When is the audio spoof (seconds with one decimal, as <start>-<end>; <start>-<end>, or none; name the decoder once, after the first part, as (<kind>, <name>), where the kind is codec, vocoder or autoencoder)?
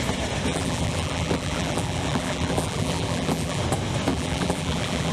0.5-3.6 (vocoder, BigVGAN v2); 4.1-5.1